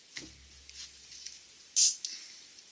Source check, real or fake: real